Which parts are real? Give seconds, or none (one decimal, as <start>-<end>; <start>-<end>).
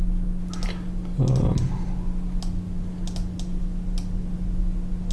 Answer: 0.0-5.1